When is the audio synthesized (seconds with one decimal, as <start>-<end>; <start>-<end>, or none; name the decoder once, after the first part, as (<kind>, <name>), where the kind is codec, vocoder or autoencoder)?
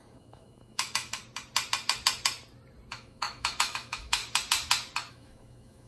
0.0-1.2 (autoencoder, DAC-VAE); 2.9-4.2; 5.1-5.9